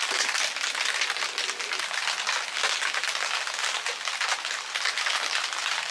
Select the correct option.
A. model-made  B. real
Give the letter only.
B